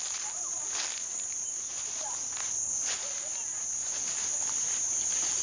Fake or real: real